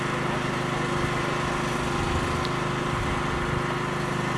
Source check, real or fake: real